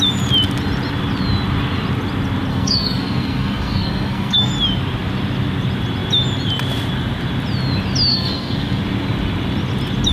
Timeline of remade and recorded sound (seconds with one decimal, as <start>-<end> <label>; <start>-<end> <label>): 0.0-2.5 recorded; 2.5-4.5 remade; 4.5-8.1 recorded; 8.1-8.8 remade; 8.8-10.1 recorded